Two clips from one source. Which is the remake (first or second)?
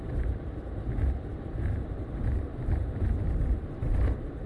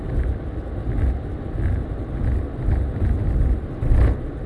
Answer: first